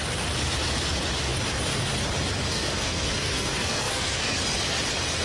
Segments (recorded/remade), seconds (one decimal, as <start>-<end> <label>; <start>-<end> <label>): 0.0-2.5 recorded; 2.5-4.4 remade; 4.4-5.2 recorded